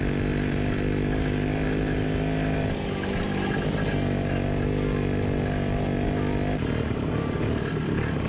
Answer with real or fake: real